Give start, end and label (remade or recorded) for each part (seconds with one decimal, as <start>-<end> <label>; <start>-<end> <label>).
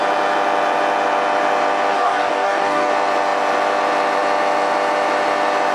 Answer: 0.0-1.9 recorded; 1.9-2.9 remade; 2.9-5.7 recorded